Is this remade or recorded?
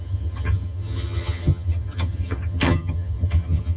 remade